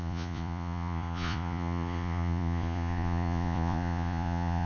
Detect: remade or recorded remade